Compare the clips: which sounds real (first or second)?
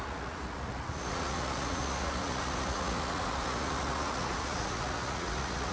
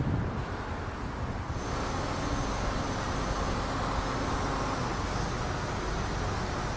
second